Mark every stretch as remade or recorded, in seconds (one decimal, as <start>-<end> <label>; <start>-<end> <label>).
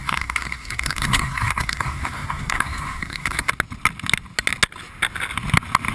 0.0-3.5 remade; 3.5-5.9 recorded